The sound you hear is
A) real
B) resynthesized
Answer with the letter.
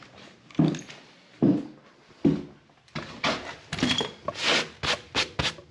A